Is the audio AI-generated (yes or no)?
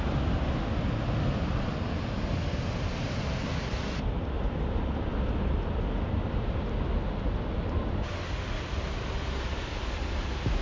no